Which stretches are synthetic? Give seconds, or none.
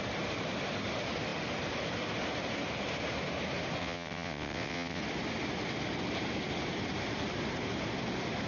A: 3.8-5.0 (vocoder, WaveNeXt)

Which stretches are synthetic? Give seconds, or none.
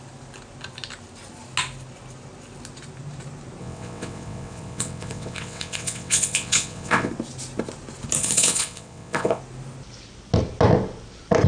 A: 3.6-7.1 (vocoder, WaveNeXt); 8.2-9.4